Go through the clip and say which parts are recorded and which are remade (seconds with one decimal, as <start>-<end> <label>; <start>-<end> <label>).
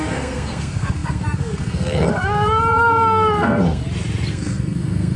0.0-3.8 remade; 3.8-4.3 recorded; 4.3-5.2 remade